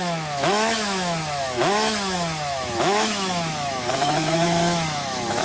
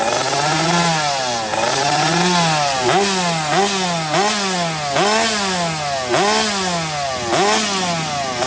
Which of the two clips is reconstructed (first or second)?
first